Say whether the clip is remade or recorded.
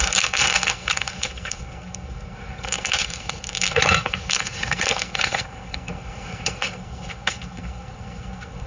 remade